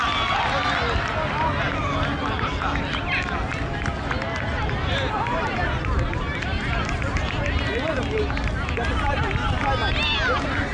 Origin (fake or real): real